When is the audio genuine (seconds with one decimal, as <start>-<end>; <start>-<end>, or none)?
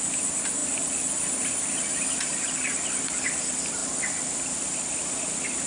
0.0-5.7